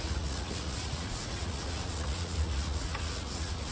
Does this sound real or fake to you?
fake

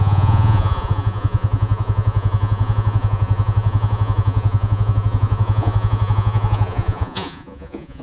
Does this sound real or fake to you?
fake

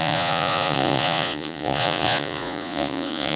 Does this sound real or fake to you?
fake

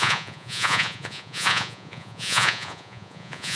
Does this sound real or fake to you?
fake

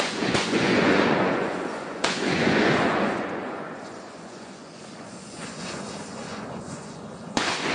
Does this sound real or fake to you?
fake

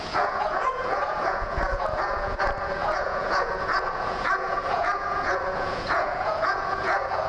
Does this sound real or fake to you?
fake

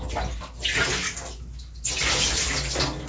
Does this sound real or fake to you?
real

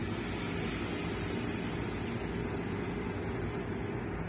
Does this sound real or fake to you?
real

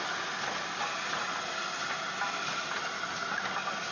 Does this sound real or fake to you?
real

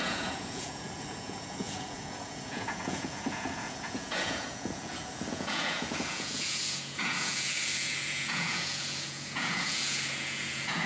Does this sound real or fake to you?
fake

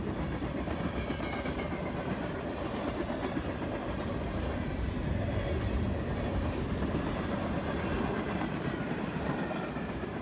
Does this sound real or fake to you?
real